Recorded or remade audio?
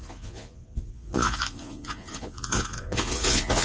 remade